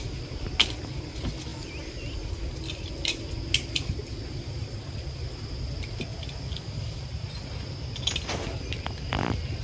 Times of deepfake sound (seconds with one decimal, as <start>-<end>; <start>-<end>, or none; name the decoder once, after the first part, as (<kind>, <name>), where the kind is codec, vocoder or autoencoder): none